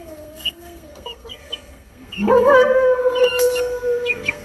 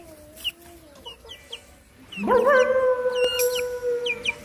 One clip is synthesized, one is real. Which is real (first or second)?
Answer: second